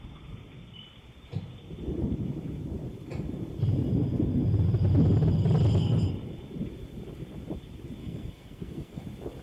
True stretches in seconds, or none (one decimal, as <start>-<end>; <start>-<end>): 0.0-8.0; 9.0-9.4